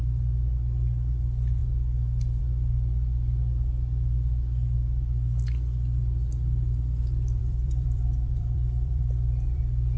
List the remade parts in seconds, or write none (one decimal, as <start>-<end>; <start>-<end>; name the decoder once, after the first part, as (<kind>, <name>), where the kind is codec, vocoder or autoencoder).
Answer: 7.4-9.6 (vocoder, BigVGAN v2)